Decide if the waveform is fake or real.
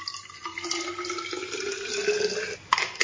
fake